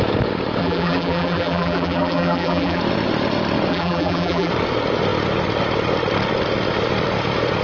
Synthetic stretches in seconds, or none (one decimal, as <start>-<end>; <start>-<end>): 0.6-2.8; 3.7-4.5